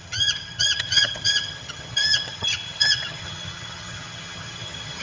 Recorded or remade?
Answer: remade